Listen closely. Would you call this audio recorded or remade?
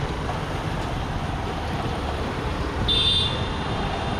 recorded